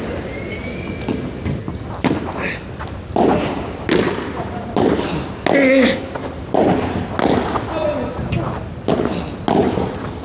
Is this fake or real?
real